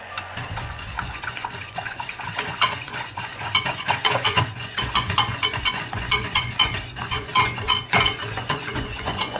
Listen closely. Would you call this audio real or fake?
fake